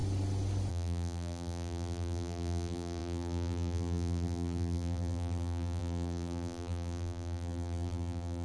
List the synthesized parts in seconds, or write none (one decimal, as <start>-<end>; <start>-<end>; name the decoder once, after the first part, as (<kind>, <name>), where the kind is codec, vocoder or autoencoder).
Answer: 0.7-8.4 (vocoder, BigVGAN v2)